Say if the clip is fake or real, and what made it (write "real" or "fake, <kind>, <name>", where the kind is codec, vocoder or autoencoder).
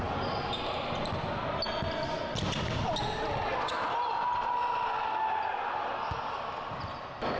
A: real